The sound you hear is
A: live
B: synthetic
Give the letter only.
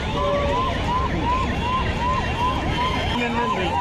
A